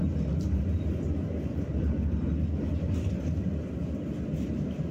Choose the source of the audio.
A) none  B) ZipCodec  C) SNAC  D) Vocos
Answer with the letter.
A